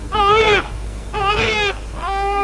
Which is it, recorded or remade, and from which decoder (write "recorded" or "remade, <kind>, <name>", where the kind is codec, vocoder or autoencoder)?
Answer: remade, codec, SNAC